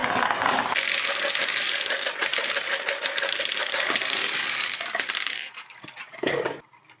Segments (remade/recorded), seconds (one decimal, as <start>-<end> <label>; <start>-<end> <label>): 0.0-0.6 remade; 0.6-3.6 recorded; 3.6-6.4 remade; 6.4-7.0 recorded